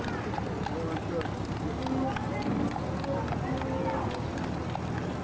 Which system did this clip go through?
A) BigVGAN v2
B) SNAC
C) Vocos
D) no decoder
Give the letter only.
D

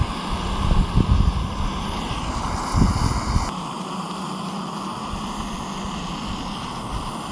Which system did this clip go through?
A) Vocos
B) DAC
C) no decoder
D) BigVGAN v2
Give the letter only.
C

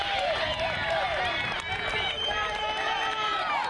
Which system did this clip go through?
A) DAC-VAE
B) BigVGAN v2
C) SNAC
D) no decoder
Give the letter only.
B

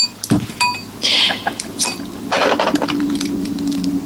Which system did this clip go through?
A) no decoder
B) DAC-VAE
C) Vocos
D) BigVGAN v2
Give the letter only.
A